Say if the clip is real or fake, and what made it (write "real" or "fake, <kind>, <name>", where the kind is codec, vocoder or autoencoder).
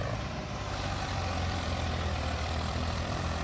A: fake, vocoder, BigVGAN v2